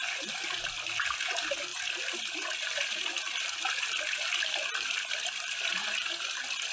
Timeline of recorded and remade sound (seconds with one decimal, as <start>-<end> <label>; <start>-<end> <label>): 0.0-6.7 recorded